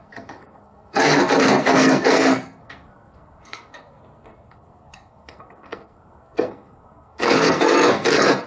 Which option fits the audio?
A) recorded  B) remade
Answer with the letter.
B